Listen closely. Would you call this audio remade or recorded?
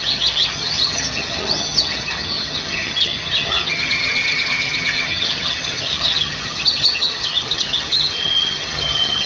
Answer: remade